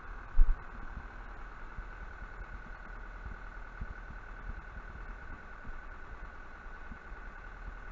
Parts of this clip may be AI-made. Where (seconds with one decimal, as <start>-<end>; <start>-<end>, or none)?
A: 5.2-7.4